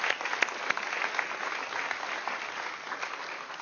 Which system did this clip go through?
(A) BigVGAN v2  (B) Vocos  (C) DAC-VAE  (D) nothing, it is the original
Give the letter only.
D